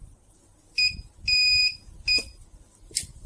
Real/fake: real